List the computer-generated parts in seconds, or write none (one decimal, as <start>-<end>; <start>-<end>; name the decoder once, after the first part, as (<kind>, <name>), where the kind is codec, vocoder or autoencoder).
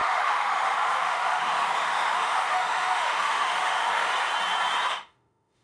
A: 0.0-4.1 (autoencoder, DAC-VAE); 4.9-5.6